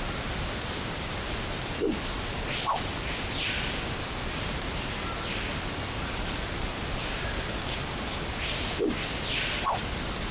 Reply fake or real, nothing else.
real